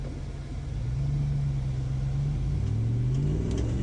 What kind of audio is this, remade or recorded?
recorded